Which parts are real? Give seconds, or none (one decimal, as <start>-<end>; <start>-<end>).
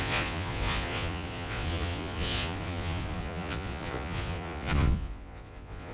none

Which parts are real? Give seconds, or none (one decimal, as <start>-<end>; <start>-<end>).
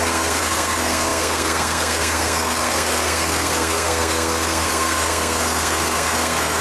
none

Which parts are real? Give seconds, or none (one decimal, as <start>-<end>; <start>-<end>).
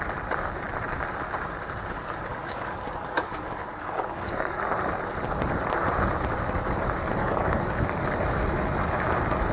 0.0-2.3; 4.6-7.2; 7.8-9.5